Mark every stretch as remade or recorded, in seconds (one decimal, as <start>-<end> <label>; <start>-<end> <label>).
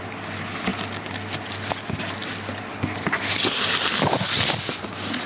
0.0-5.3 recorded